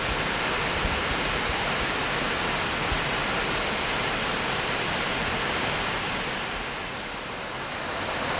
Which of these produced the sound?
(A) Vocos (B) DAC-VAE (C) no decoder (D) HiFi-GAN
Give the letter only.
C